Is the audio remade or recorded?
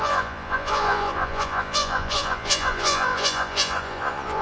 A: remade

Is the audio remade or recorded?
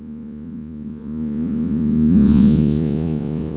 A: remade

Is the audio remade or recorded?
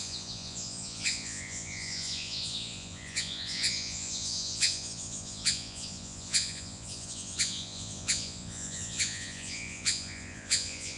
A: remade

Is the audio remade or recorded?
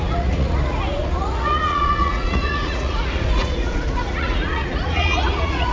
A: remade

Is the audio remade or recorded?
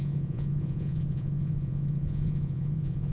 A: remade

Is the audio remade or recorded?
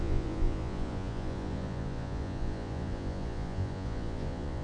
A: remade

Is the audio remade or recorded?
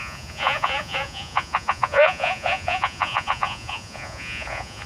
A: remade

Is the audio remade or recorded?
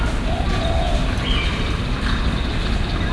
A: recorded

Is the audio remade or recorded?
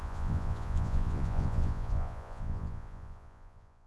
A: remade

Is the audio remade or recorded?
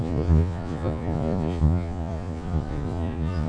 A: remade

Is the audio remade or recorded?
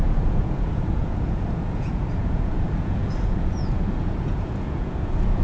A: remade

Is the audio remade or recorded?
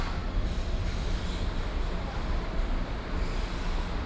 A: recorded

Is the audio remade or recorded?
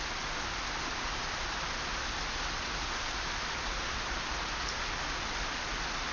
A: recorded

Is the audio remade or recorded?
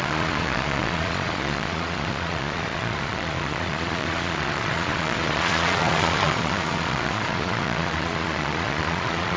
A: remade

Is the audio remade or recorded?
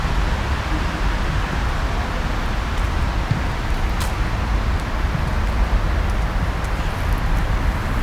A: recorded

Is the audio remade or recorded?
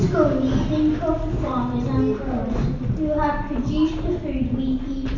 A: recorded